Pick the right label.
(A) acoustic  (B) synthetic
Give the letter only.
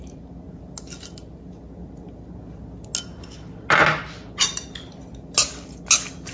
A